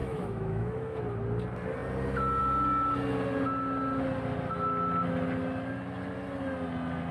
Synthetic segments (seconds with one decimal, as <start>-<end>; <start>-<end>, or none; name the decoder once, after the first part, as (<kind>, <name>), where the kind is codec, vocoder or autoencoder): 0.0-1.0 (autoencoder, DAC-VAE)